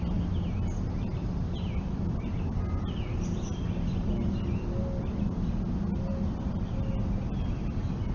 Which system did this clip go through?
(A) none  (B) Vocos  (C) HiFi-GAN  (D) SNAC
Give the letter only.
A